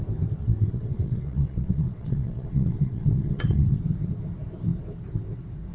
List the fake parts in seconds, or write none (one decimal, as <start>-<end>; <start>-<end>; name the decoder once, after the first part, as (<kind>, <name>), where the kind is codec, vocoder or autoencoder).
0.4-3.8 (vocoder, WaveNeXt)